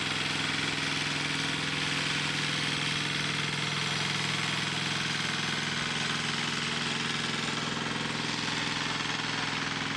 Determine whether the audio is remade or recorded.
recorded